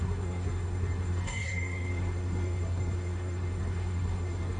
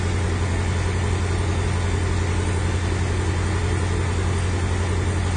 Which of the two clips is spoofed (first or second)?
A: first